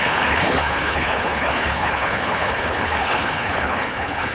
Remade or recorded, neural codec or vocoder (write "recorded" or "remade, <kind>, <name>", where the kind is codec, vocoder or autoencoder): remade, codec, HILCodec